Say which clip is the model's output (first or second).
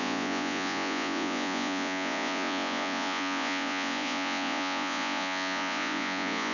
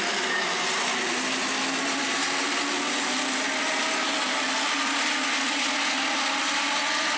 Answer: first